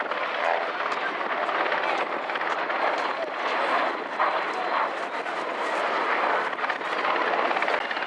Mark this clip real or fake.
real